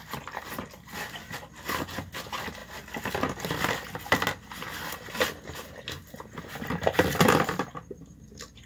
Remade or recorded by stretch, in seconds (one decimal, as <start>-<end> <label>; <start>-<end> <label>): 0.0-8.7 recorded